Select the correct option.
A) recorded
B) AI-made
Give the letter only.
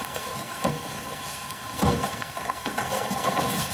B